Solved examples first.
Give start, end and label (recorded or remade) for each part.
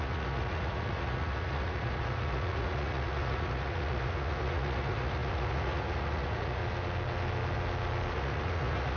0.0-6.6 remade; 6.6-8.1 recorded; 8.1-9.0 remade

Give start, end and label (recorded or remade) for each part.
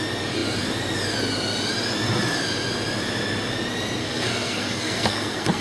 0.0-4.0 recorded; 4.0-5.6 remade